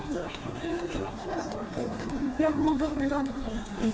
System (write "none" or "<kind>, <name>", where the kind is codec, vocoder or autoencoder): codec, SNAC